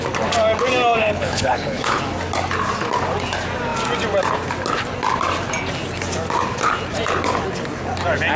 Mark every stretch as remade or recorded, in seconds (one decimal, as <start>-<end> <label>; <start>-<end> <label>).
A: 0.0-1.0 recorded; 1.0-2.0 remade; 2.0-8.4 recorded